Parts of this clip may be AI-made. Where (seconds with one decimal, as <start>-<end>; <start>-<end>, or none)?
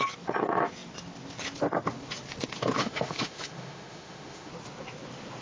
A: 2.8-4.5